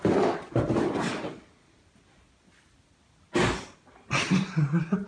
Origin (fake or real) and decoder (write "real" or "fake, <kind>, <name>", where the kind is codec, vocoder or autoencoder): real